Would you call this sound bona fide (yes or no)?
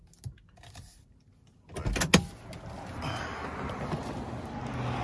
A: yes